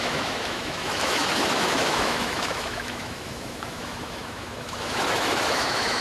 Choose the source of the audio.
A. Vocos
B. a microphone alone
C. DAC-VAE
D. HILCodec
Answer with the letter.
C